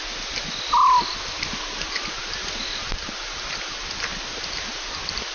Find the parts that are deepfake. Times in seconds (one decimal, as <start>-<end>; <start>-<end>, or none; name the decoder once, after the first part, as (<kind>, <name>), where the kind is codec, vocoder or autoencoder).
none